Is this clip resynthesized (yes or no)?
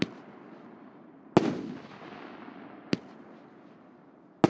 no